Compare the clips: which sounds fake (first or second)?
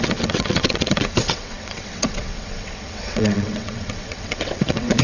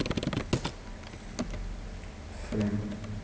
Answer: first